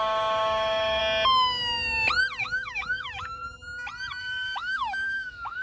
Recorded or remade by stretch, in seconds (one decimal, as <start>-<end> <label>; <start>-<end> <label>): 0.0-1.0 remade; 1.0-2.4 recorded; 2.4-3.4 remade; 3.4-4.2 recorded; 4.2-5.6 remade